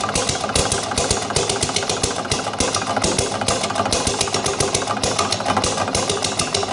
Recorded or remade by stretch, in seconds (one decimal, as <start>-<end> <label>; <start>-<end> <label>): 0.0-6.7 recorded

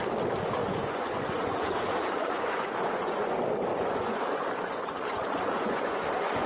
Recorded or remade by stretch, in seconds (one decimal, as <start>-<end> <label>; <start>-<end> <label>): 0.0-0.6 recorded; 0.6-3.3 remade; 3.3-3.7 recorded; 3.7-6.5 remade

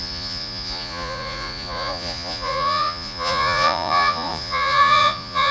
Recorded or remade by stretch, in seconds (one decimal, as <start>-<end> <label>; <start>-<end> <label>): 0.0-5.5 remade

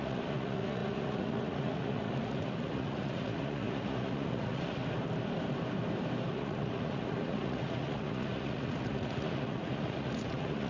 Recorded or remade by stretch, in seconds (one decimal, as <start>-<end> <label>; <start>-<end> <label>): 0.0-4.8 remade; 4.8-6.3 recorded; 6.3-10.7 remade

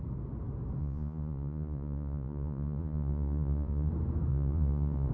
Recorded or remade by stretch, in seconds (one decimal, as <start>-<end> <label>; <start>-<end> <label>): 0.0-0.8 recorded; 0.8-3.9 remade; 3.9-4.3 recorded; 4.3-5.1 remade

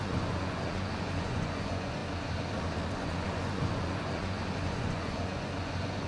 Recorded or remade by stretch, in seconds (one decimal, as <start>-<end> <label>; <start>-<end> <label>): 0.0-2.0 remade; 2.0-2.9 recorded; 2.9-6.1 remade

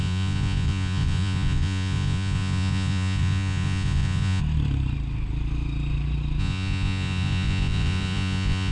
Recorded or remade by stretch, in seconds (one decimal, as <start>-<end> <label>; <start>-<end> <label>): 0.0-4.4 remade; 4.4-6.4 recorded; 6.4-8.7 remade

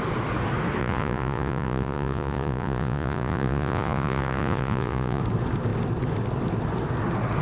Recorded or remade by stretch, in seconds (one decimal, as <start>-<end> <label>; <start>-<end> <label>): 0.0-0.8 recorded; 0.8-5.2 remade; 5.2-7.4 recorded